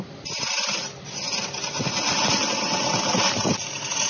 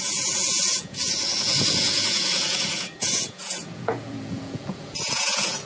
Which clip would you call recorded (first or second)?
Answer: first